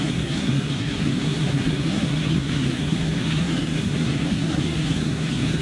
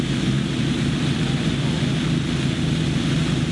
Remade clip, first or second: first